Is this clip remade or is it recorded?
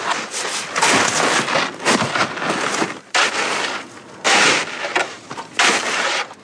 recorded